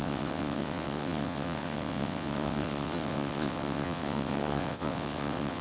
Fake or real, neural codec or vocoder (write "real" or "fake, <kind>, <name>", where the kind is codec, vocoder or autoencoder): fake, vocoder, WaveNeXt